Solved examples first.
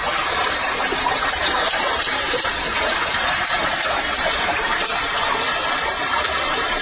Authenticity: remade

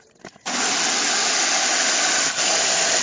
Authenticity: recorded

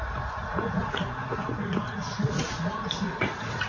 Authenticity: remade